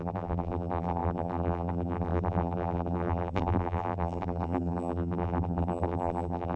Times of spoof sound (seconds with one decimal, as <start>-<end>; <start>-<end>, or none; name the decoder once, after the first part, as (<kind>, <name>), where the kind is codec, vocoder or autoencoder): 0.0-6.6 (vocoder, BigVGAN v2)